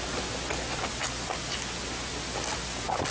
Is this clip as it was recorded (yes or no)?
yes